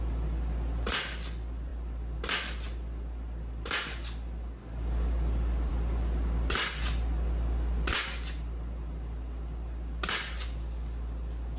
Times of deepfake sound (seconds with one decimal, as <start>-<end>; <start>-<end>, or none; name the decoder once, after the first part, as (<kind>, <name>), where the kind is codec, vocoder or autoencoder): none